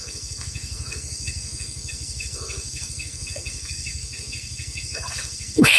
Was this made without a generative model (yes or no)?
no